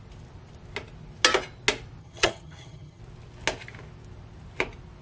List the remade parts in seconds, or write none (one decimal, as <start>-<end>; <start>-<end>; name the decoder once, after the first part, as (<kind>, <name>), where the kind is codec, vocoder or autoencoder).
2.0-3.0 (vocoder, HiFi-GAN)